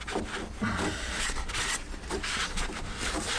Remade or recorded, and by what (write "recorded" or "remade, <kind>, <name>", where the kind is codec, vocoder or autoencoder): recorded